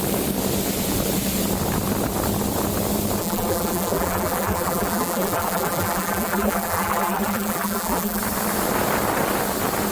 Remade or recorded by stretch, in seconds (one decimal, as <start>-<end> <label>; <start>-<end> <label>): 0.0-3.2 recorded; 3.2-8.2 remade; 8.2-9.9 recorded